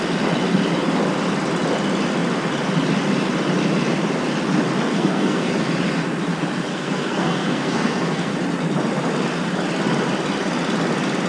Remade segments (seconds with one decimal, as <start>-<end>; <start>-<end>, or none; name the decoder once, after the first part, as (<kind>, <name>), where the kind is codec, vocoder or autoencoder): 4.9-5.5 (codec, SNAC); 6.7-8.3